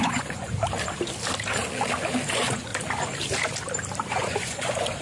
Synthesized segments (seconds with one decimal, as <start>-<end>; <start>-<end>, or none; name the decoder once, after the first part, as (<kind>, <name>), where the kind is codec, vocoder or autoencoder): 0.0-0.5 (vocoder, Vocos); 2.3-2.7; 4.1-5.0